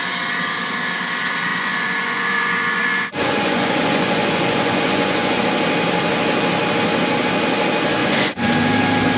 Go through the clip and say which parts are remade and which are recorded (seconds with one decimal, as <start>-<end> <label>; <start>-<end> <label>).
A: 0.0-1.5 recorded; 1.5-5.4 remade; 5.4-8.0 recorded; 8.0-8.5 remade; 8.5-9.2 recorded